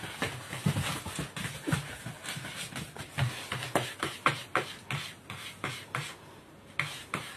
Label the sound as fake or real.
real